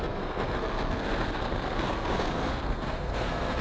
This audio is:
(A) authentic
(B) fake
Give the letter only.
B